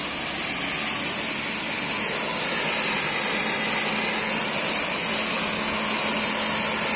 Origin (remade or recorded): recorded